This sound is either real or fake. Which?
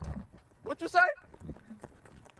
fake